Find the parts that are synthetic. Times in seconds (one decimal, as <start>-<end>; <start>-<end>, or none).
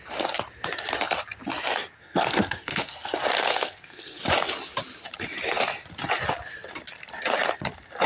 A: 2.0-3.1; 3.5-4.2